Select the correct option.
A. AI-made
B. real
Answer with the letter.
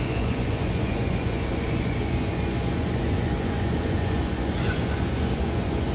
A